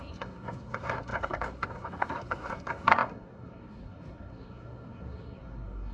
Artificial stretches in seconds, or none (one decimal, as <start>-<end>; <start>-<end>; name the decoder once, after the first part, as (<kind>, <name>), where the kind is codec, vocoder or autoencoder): 0.0-5.9 (codec, SNAC)